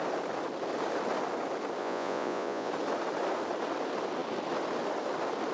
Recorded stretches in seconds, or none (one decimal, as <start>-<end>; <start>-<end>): 0.0-1.8; 2.7-5.5